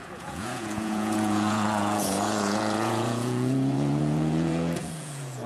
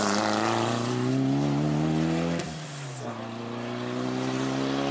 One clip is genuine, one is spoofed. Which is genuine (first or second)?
second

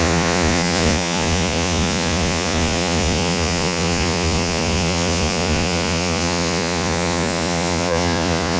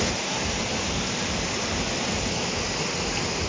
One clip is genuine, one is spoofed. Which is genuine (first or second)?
second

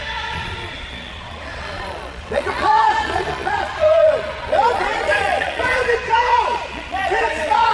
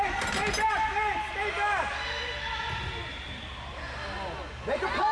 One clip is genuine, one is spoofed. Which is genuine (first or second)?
second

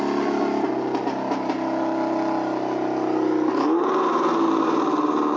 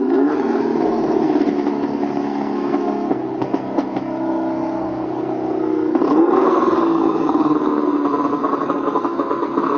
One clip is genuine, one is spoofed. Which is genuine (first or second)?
first